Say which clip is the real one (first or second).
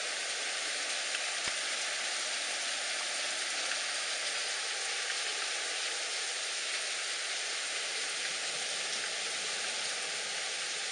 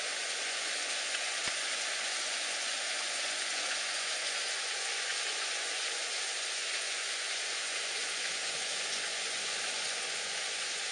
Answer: first